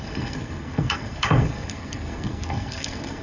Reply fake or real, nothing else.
fake